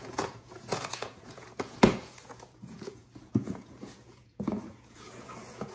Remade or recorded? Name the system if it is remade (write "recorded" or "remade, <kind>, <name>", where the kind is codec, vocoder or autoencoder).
remade, vocoder, Vocos